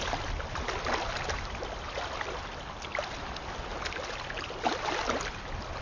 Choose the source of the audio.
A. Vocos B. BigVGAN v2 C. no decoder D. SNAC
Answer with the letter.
C